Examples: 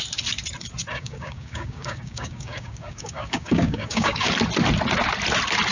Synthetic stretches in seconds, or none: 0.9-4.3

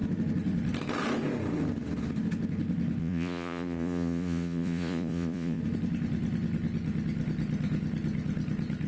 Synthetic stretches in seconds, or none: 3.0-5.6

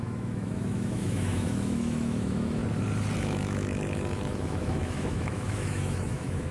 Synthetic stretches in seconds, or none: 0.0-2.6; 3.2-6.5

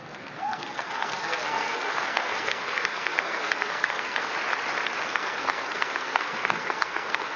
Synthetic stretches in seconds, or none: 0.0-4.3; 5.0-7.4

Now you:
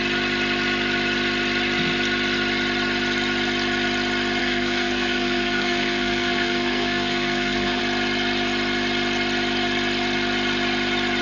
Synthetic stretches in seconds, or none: 4.4-7.8

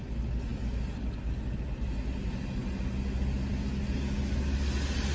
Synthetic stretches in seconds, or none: none

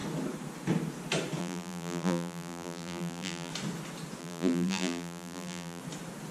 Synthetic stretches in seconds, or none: 1.4-3.5; 4.2-5.8